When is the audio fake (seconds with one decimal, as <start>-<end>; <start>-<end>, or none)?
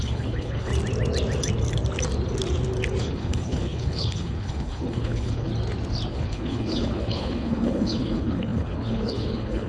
0.0-0.7; 3.0-5.5; 6.1-9.7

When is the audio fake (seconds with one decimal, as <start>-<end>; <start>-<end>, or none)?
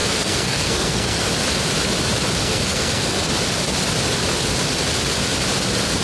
0.0-1.3; 2.4-3.3